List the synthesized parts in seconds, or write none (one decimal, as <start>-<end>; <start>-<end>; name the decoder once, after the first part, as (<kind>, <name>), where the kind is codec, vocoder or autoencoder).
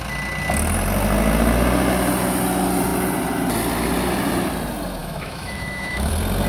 5.0-6.1 (autoencoder, DAC-VAE)